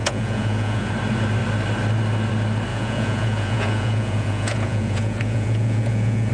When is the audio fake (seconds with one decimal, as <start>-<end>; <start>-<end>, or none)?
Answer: 0.0-0.9; 2.7-6.3